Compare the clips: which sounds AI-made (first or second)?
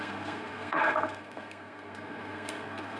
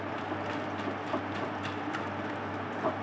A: first